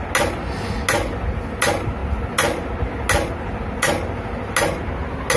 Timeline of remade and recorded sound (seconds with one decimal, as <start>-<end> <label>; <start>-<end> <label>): 0.0-5.4 recorded